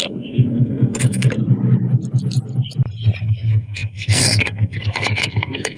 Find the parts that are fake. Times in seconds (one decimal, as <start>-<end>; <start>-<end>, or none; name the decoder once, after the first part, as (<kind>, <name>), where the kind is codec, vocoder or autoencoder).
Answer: 0.0-1.4 (codec, SNAC); 3.2-5.8